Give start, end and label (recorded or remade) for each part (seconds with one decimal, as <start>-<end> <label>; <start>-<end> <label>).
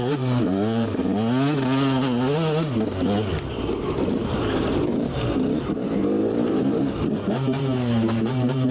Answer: 0.0-1.0 remade; 1.0-3.5 recorded; 3.5-8.7 remade